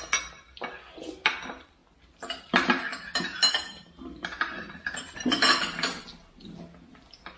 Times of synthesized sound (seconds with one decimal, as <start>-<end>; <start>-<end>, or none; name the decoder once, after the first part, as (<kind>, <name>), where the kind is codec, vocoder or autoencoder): none